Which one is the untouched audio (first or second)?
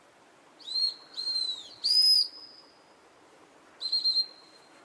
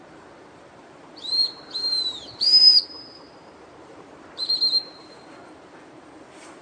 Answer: first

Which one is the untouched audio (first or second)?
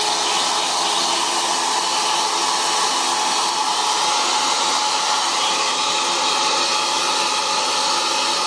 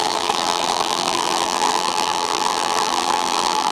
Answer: first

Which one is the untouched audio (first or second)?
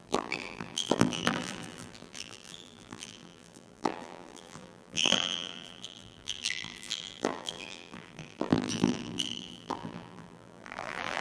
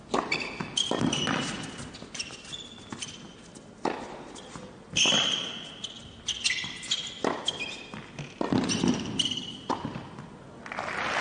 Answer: second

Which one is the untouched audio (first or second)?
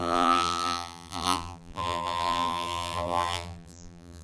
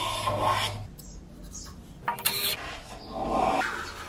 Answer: second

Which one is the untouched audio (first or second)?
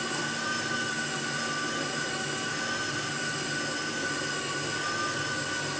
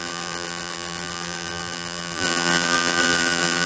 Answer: first